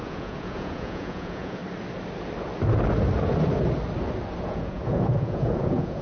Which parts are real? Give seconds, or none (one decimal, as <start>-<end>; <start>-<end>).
1.6-4.4